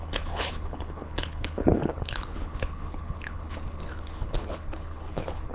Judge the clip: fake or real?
fake